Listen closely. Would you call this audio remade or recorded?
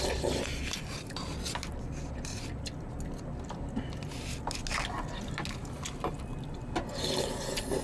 recorded